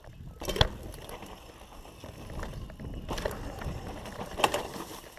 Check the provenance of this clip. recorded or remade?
recorded